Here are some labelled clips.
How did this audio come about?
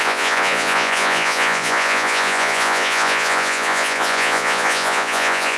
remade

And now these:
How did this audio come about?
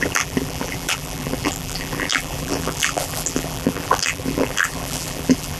remade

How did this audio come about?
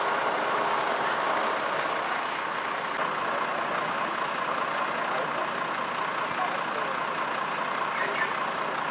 recorded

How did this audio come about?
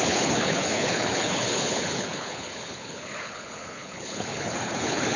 remade